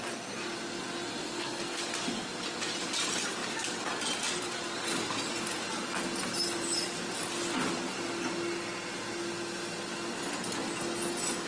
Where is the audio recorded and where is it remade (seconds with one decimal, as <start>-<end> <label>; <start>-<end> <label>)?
0.0-1.2 recorded; 1.2-1.8 remade; 1.8-11.5 recorded